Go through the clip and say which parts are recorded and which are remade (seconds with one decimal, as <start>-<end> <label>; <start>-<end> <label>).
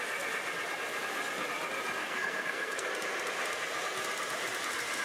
0.0-2.0 recorded; 2.0-2.9 remade; 2.9-5.0 recorded